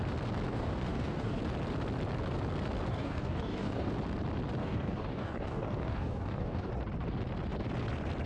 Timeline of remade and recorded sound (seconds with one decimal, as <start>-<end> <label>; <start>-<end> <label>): 0.0-0.5 recorded; 0.5-1.4 remade; 1.4-2.9 recorded; 2.9-3.9 remade; 3.9-4.6 recorded; 4.6-6.7 remade; 6.7-8.3 recorded